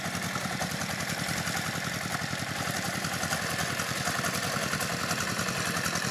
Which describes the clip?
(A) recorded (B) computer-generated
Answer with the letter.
A